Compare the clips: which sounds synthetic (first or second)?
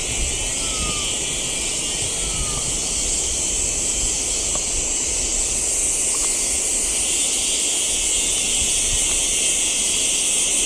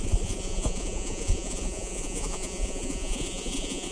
second